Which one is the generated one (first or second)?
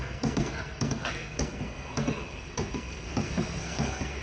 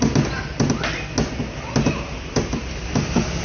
first